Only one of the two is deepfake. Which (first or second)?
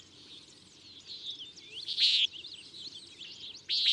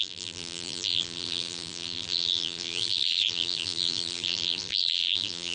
second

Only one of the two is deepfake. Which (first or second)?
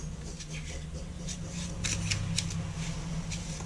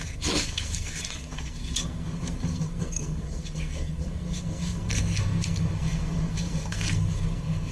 second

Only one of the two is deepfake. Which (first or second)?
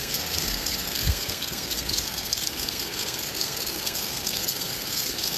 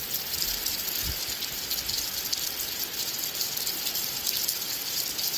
first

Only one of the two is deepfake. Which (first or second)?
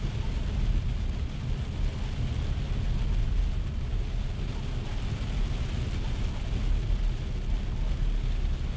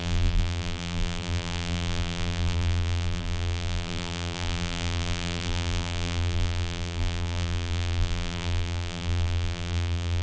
second